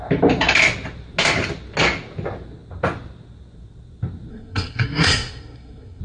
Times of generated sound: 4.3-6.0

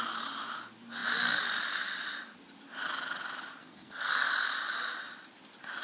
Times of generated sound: 3.6-4.3